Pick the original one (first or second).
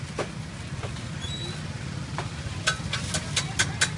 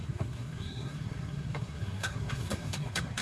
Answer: first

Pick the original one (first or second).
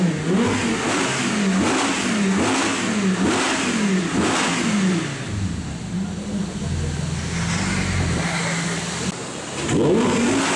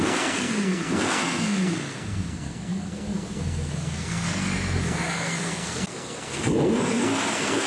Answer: first